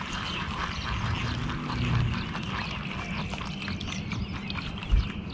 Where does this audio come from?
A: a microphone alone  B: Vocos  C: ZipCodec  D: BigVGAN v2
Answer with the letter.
A